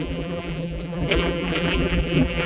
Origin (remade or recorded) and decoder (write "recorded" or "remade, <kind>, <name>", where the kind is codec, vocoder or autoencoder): remade, vocoder, BigVGAN v2